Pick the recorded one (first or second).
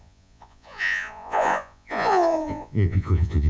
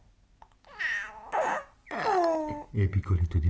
second